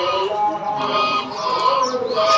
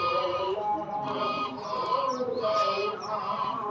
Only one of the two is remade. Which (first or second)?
second